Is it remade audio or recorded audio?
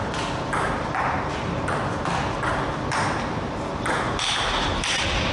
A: recorded